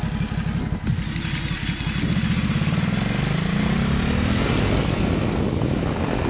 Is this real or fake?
real